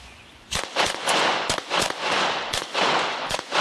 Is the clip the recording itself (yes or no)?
no